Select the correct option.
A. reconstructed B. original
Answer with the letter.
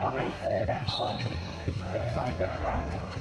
A